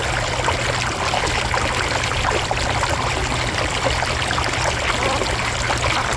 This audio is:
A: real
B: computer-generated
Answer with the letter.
A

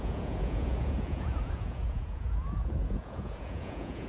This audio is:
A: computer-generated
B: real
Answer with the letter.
A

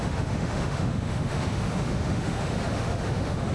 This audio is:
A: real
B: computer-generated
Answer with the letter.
B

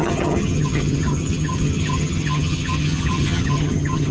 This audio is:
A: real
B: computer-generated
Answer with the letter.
B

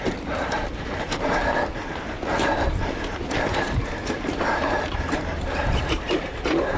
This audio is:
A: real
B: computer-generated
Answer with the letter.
B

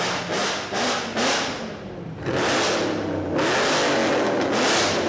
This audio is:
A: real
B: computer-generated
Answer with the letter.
A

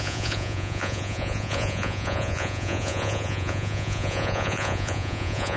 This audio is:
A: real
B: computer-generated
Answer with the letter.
B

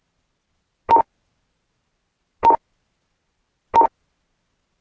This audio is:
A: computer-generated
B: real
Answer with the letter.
B